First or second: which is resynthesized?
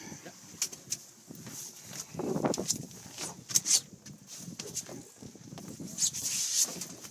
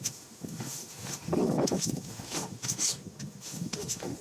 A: second